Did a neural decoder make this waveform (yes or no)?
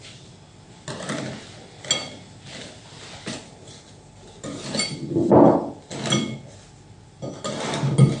no